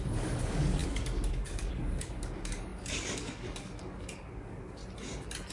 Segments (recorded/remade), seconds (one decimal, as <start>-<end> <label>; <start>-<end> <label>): 0.0-4.8 remade; 4.8-5.5 recorded